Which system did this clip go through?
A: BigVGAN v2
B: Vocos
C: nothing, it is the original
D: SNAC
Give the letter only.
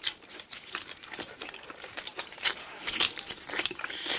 A